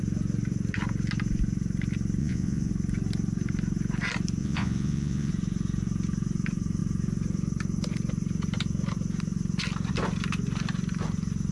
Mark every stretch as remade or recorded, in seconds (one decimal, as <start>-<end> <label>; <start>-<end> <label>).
0.0-2.2 recorded; 2.2-2.7 remade; 2.7-4.4 recorded; 4.4-5.3 remade; 5.3-11.5 recorded